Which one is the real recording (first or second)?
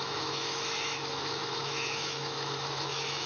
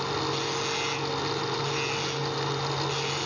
second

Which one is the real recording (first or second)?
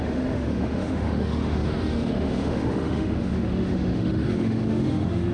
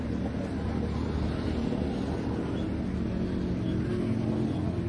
second